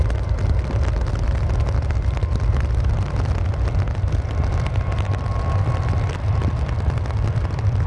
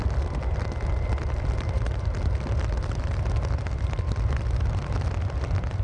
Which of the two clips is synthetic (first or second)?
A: second